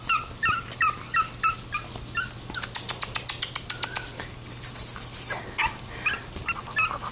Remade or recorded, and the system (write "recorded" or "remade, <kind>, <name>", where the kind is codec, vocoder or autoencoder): recorded